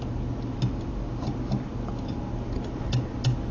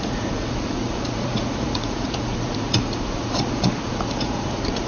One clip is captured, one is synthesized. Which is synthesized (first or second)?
second